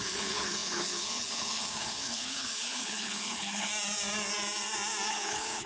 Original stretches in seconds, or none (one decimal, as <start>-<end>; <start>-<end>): 3.7-5.1